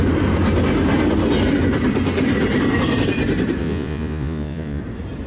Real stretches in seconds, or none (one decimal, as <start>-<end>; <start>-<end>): 0.0-3.6; 4.8-5.3